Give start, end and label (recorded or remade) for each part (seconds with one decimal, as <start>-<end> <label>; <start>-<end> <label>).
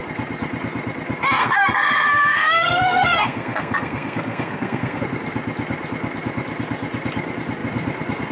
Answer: 0.0-1.4 recorded; 1.4-5.0 remade; 5.0-8.3 recorded